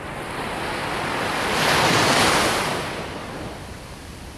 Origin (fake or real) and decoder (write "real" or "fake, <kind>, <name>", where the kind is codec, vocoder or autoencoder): real